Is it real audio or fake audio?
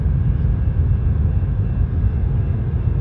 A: real